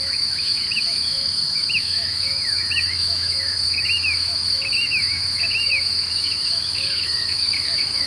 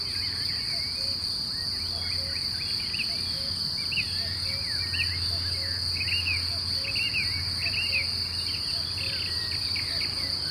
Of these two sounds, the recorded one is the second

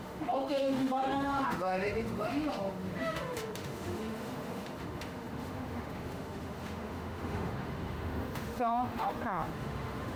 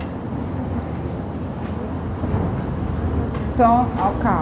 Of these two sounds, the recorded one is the second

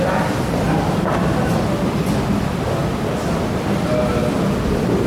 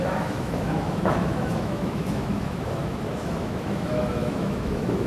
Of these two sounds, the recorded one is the first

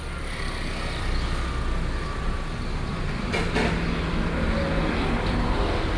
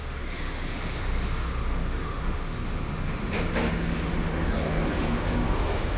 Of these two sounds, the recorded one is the first